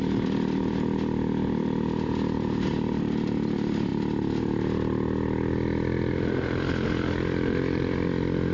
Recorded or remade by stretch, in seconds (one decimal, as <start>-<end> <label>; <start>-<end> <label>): 0.0-3.9 remade; 3.9-4.4 recorded; 4.4-8.5 remade